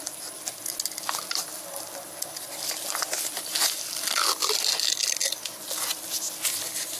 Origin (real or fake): real